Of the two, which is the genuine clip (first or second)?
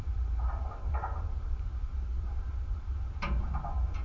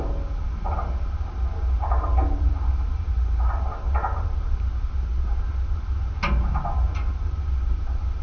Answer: second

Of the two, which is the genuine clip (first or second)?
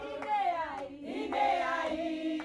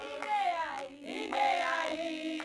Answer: first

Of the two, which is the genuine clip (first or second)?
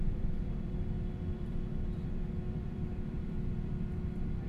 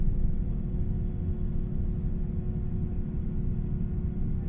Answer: second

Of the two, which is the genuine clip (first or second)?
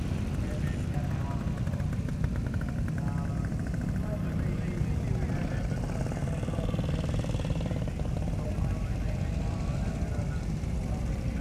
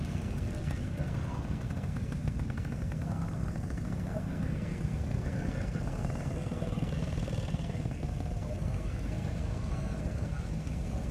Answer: first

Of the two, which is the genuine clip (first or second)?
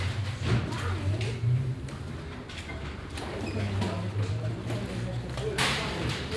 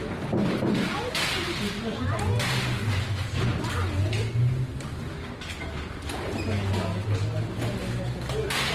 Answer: second